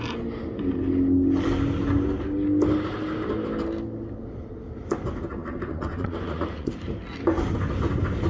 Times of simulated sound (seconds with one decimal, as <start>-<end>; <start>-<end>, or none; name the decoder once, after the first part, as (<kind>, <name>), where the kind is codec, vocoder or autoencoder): 5.4-6.7 (vocoder, Vocos)